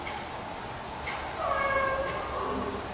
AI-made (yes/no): no